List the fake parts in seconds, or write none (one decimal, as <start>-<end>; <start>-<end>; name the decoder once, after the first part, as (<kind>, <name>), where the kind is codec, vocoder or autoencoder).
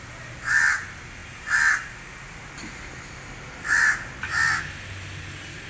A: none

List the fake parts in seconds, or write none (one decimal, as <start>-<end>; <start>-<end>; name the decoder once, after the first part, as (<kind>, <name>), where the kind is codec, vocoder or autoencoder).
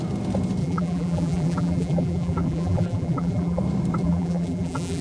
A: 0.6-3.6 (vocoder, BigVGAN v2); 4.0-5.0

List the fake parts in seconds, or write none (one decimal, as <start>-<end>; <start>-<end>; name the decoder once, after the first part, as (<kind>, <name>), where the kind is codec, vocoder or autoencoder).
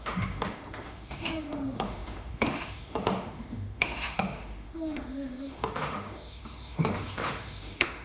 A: 0.0-8.0 (autoencoder, DAC-VAE)